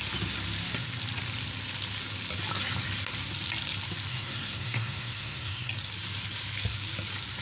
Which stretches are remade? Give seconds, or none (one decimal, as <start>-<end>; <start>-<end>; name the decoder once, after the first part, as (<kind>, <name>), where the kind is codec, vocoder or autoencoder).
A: 4.1-5.7 (codec, SNAC)